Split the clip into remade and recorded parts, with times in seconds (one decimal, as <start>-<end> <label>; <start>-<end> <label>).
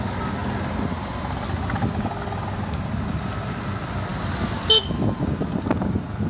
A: 0.0-6.3 recorded